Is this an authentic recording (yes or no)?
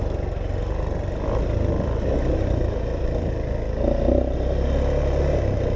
yes